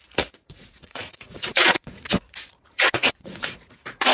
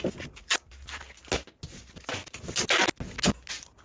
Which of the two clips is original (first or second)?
second